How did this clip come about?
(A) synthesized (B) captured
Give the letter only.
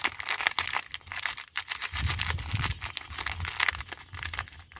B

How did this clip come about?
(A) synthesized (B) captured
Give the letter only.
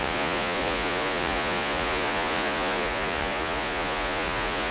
A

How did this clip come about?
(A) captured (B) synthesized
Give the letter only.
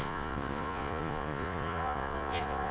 B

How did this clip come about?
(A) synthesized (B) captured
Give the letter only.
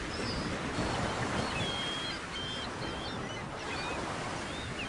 B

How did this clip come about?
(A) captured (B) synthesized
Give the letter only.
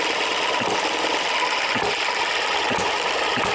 A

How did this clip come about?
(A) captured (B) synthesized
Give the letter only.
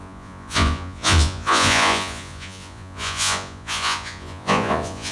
B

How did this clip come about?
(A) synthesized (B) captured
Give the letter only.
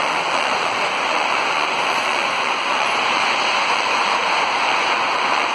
A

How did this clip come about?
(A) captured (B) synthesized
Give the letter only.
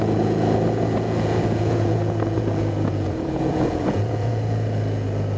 B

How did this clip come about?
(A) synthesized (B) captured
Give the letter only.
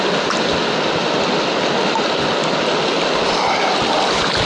B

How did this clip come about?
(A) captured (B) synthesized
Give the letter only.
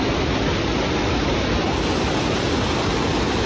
A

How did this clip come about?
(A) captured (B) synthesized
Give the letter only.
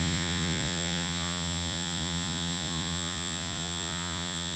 B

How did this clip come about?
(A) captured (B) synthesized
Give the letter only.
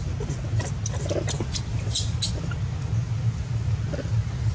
A